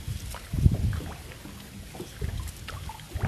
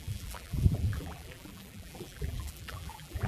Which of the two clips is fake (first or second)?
second